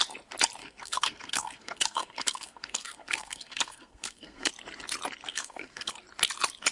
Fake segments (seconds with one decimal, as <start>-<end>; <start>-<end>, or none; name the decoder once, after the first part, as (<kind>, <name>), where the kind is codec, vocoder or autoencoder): 0.6-4.5 (codec, SNAC); 5.3-5.9